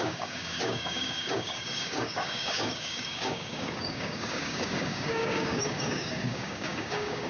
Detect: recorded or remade remade